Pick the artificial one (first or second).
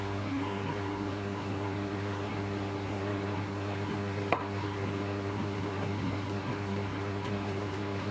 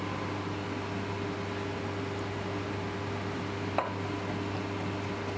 first